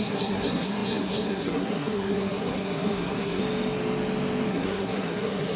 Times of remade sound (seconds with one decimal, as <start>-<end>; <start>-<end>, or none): 0.0-3.4; 4.5-5.6